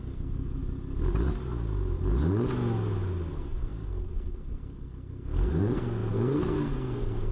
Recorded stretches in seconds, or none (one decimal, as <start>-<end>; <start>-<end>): 0.6-3.3